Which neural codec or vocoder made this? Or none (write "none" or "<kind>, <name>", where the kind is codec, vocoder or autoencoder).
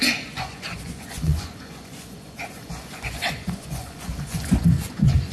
vocoder, Vocos